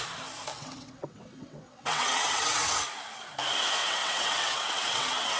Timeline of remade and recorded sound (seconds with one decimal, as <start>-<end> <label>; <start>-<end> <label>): 0.0-0.5 recorded; 0.5-2.8 remade; 2.8-3.8 recorded; 3.8-5.4 remade